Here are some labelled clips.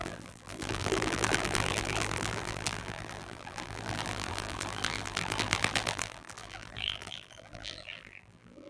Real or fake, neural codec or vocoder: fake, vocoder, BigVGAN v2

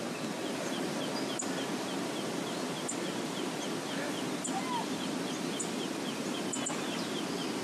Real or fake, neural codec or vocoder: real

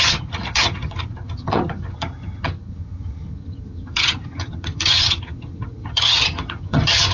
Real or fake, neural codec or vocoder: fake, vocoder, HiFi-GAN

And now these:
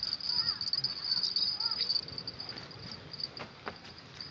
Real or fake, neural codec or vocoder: real